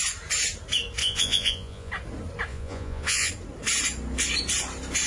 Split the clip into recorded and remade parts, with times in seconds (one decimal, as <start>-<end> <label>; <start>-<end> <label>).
0.0-1.0 recorded; 1.0-1.9 remade; 1.9-2.5 recorded; 2.5-3.3 remade; 3.3-5.1 recorded